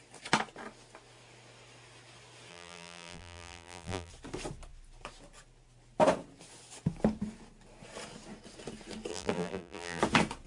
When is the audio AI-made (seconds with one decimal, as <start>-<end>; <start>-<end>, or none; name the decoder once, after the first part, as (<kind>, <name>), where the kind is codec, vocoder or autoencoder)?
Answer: 2.5-4.1 (vocoder, BigVGAN v2); 9.1-10.0